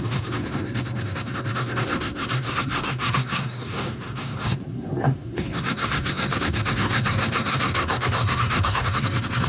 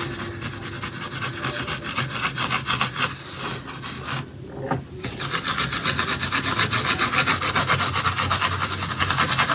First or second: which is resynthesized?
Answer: first